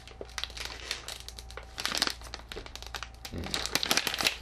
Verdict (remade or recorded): recorded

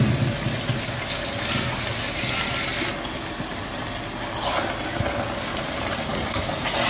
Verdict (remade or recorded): recorded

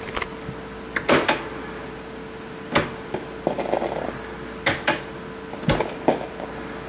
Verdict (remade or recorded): recorded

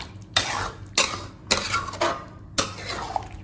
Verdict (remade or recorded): recorded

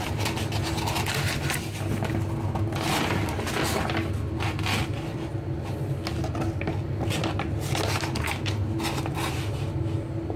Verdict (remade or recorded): recorded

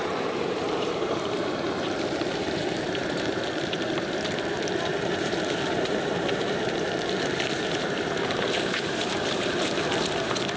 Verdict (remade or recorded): remade